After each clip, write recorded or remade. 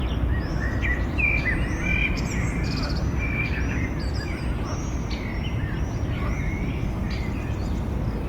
recorded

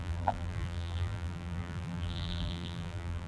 remade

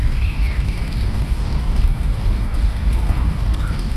remade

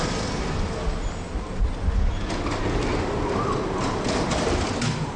recorded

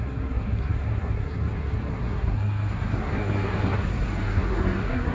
remade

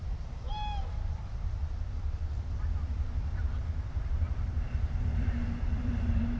remade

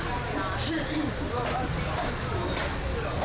recorded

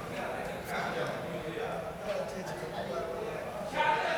remade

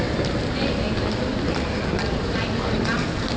recorded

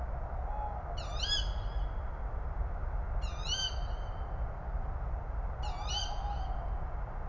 recorded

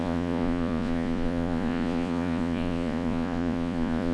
remade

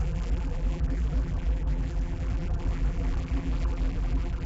remade